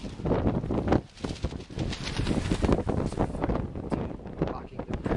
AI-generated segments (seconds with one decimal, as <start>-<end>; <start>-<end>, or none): none